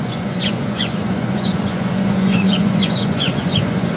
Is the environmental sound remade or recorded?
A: remade